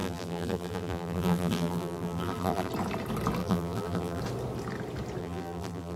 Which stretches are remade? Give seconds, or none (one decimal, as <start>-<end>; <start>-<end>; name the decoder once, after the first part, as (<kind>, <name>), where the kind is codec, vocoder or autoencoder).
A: 0.0-2.7 (vocoder, BigVGAN v2); 3.4-4.2; 5.2-6.0